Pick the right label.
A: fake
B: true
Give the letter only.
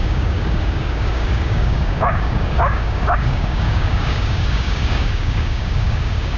A